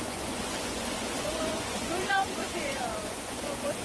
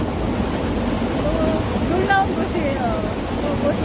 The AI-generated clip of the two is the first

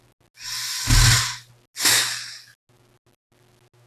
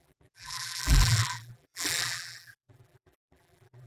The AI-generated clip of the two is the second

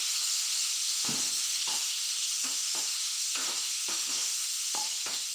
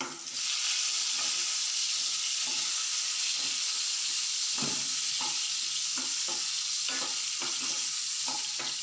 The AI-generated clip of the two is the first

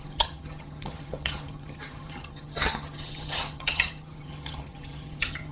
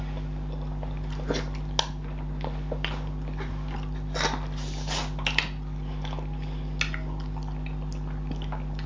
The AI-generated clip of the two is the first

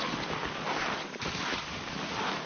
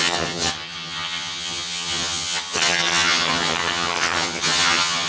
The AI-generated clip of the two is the second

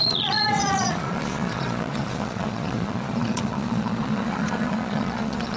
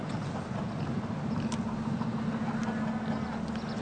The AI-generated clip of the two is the first